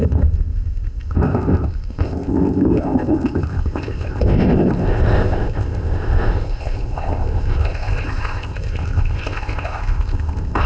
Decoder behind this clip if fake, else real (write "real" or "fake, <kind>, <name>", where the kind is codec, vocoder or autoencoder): fake, codec, ZipCodec